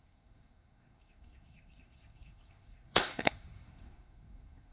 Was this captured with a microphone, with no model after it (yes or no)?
no